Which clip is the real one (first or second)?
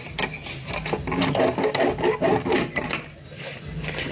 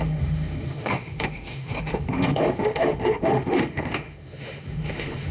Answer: first